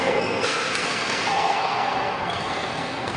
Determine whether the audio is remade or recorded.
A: remade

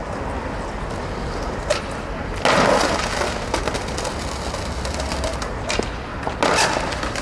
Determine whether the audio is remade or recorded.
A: recorded